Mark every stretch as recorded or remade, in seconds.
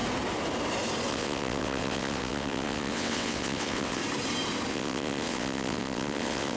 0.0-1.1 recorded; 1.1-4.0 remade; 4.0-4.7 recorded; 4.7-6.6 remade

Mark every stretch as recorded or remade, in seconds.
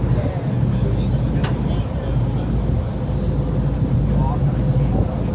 0.0-5.3 recorded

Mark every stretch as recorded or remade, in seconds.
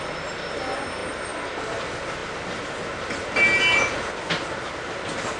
0.0-5.4 recorded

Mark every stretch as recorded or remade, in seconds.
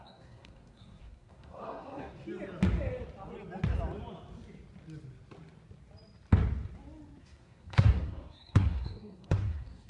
0.0-2.2 remade; 2.2-7.2 recorded; 7.2-9.9 remade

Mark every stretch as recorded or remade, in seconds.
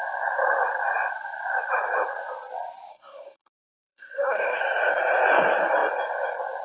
0.0-2.9 recorded; 2.9-4.6 remade; 4.6-6.6 recorded